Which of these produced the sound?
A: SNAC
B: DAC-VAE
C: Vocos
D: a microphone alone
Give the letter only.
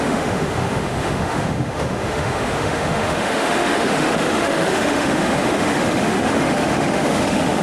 B